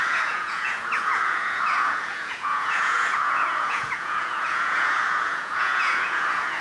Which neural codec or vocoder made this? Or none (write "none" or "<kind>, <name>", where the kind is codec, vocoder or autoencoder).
vocoder, Vocos